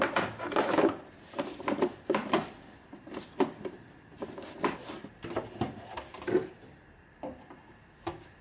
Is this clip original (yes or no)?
yes